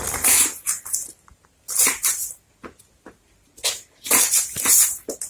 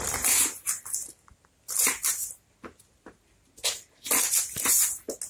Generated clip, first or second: first